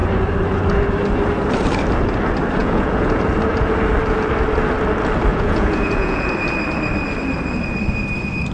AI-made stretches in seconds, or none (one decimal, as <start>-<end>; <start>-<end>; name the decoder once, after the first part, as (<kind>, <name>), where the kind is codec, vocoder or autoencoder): 2.6-3.2 (vocoder, Vocos); 5.3-6.3